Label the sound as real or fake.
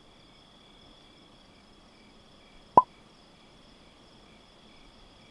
real